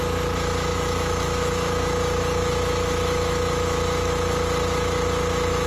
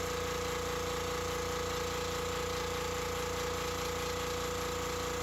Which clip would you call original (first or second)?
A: second